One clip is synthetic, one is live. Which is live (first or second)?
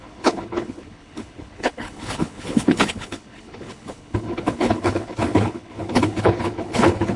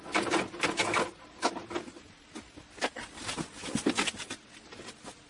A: second